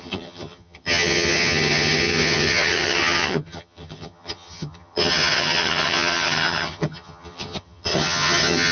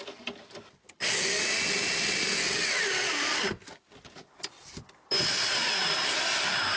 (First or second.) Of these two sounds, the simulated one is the first